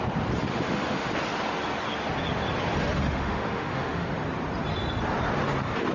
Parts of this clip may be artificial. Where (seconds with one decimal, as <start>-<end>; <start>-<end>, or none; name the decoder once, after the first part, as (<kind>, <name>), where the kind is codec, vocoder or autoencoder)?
0.5-1.1 (autoencoder, DAC-VAE); 3.0-4.1